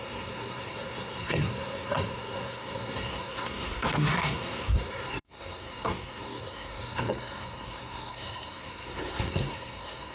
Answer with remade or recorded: remade